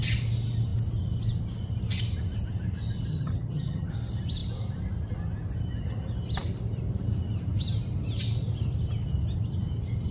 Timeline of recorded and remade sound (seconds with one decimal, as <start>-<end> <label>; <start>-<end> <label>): 0.0-3.1 recorded; 3.1-3.9 remade; 3.9-10.1 recorded